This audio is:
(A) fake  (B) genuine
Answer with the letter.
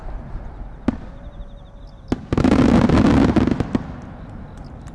B